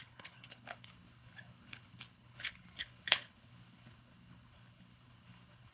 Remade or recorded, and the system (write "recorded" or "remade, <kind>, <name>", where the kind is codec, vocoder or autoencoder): remade, codec, HILCodec